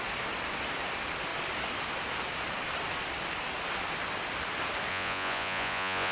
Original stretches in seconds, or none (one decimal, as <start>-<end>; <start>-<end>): 0.0-4.9